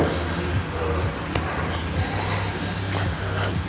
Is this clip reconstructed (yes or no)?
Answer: no